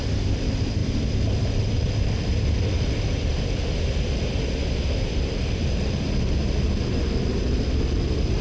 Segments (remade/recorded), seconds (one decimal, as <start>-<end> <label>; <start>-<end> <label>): 0.0-8.4 recorded